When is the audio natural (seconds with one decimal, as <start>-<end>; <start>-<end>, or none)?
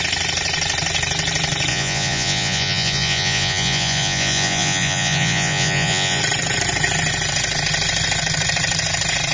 0.0-1.7; 6.2-9.3